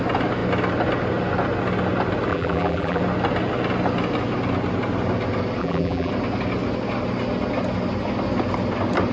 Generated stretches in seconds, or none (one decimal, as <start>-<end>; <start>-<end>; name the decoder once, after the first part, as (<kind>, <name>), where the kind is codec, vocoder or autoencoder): 2.3-3.0 (vocoder, BigVGAN v2); 5.6-6.1